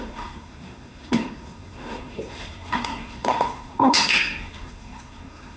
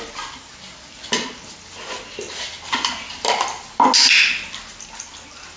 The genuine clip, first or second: second